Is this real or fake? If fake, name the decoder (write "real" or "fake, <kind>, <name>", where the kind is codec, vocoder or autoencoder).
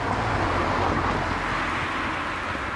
real